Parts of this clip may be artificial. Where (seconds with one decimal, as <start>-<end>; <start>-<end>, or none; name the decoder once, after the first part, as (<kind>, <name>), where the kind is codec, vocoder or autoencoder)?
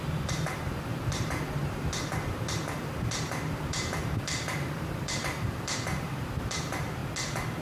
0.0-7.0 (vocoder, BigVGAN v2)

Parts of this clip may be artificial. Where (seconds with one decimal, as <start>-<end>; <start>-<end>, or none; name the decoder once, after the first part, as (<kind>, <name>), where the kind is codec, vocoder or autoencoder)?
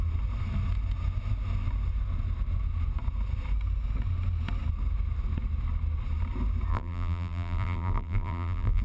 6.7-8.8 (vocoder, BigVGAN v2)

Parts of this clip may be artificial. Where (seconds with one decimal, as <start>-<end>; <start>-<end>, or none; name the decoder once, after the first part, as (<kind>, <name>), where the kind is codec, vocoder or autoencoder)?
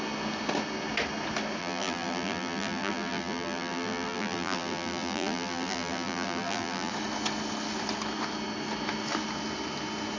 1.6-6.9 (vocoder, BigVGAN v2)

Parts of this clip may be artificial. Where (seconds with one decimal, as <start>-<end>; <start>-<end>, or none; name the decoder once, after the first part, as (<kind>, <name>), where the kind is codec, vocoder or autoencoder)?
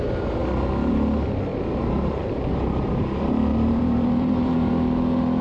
1.5-4.7 (vocoder, BigVGAN v2)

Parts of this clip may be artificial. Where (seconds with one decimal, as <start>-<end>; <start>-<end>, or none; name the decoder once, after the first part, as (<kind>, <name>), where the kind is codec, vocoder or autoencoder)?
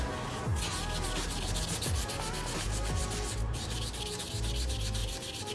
3.4-4.3 (vocoder, BigVGAN v2); 5.0-5.5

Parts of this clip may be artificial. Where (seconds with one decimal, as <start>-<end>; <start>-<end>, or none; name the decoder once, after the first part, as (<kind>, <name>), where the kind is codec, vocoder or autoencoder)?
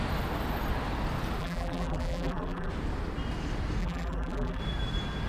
1.4-2.7 (vocoder, BigVGAN v2); 3.8-4.6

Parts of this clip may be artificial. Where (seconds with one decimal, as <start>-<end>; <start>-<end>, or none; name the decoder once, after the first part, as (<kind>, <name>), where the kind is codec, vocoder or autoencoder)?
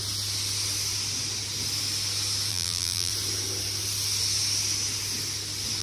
2.5-3.1 (vocoder, BigVGAN v2)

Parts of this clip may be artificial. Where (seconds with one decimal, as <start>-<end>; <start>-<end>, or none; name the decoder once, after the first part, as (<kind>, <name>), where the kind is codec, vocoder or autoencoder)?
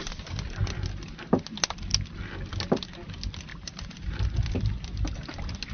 3.5-4.1 (vocoder, BigVGAN v2)